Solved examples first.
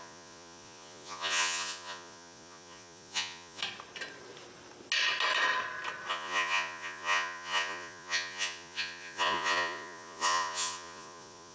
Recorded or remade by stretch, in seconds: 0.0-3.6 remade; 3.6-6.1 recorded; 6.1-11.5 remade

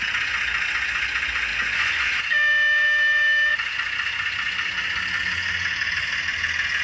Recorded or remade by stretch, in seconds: 0.0-1.5 recorded; 1.5-2.2 remade; 2.2-6.8 recorded

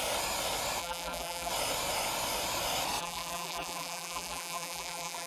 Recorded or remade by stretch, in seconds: 0.0-0.8 recorded; 0.8-1.5 remade; 1.5-3.0 recorded; 3.0-5.3 remade

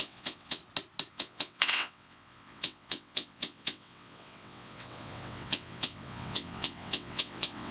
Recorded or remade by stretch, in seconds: 0.0-0.6 remade; 0.6-1.1 recorded; 1.1-7.7 remade

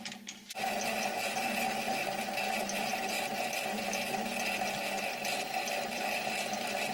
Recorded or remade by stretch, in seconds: 0.0-6.9 recorded

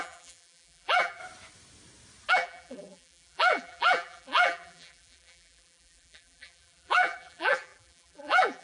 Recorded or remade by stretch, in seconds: 0.0-1.2 remade; 1.2-2.3 recorded; 2.3-8.6 remade

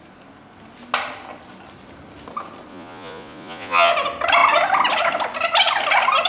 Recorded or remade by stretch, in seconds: 0.0-2.7 recorded; 2.7-3.9 remade; 3.9-6.3 recorded

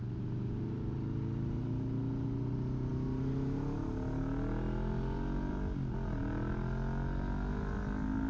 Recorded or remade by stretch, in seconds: 0.0-8.3 recorded